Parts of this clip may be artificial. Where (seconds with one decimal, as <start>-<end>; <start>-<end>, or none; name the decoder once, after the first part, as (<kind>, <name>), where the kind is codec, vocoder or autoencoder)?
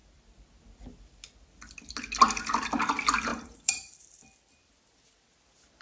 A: 3.3-4.2 (vocoder, BigVGAN v2)